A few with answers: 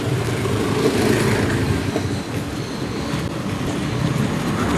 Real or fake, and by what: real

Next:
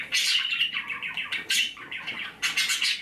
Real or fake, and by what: real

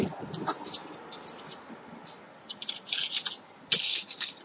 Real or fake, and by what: real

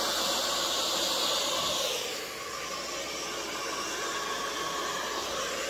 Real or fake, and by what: real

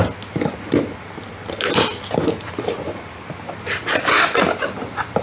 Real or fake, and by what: real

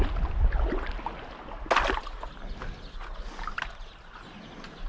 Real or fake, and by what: real